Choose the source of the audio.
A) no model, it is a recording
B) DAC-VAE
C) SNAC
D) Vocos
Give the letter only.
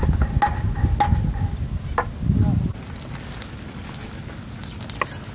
A